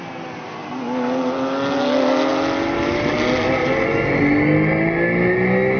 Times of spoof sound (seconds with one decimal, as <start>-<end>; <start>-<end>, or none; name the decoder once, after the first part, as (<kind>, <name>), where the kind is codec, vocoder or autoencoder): none

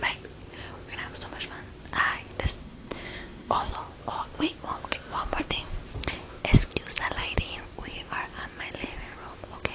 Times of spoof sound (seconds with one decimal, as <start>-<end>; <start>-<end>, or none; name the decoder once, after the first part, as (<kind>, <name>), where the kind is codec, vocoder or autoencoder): 2.6-3.7 (codec, SNAC)